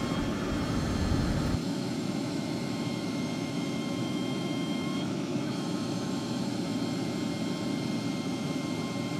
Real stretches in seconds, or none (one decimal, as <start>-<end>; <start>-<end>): 0.0-1.6; 6.5-9.2